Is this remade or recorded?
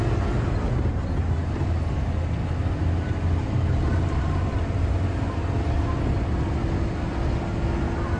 recorded